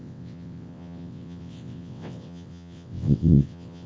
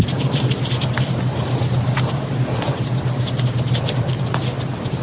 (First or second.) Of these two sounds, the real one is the second